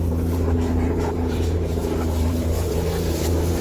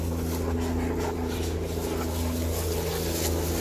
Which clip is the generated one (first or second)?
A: first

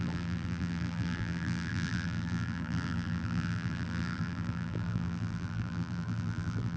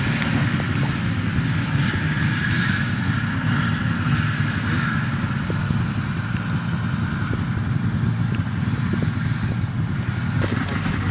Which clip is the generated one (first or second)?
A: first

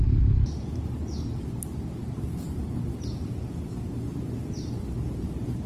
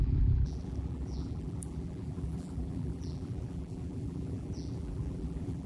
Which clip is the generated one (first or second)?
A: second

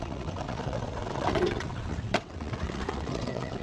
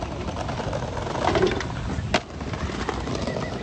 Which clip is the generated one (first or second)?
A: first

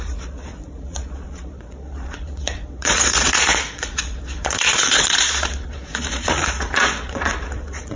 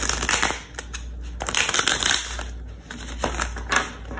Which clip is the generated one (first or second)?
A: first